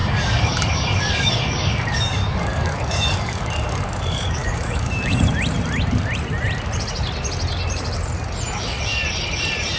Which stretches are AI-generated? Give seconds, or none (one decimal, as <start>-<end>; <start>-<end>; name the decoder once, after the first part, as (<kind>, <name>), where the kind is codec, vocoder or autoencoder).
0.0-5.2 (codec, DAC)